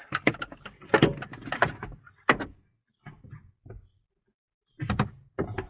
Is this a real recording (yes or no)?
yes